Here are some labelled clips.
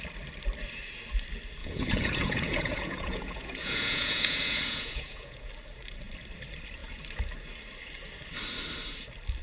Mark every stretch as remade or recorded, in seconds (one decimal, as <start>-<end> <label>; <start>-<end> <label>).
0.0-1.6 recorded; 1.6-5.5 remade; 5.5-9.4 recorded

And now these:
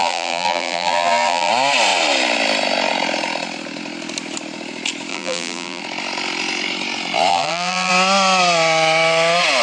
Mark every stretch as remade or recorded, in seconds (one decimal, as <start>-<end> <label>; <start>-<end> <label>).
0.0-1.5 remade; 1.5-5.1 recorded; 5.1-5.8 remade; 5.8-7.3 recorded; 7.3-7.9 remade; 7.9-9.6 recorded

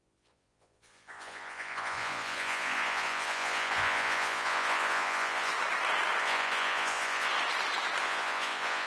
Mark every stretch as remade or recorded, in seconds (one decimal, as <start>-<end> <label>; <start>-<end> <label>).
0.0-5.5 remade; 5.5-6.2 recorded; 6.2-7.3 remade; 7.3-8.0 recorded; 8.0-8.9 remade